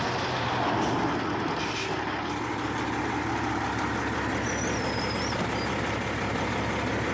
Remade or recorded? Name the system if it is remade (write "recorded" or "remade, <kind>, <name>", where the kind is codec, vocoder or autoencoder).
recorded